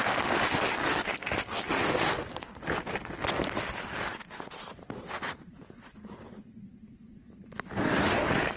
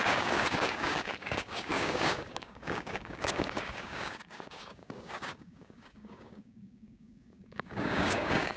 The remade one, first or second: second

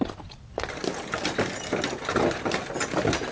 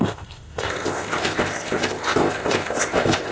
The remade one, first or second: second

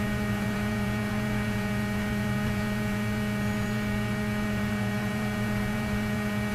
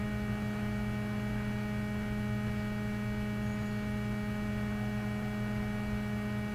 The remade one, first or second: first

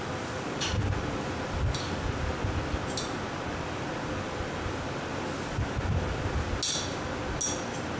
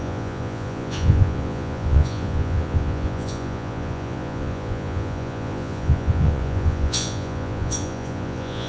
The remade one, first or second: second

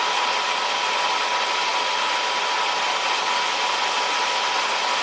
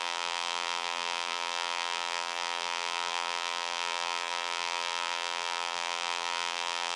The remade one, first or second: second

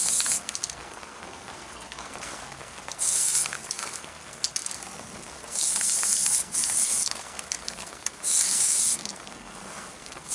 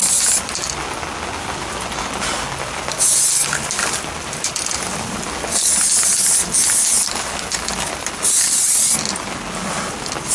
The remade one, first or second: first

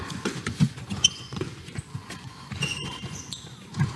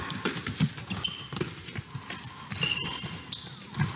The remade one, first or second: first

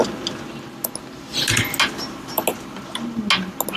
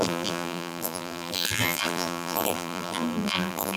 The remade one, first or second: second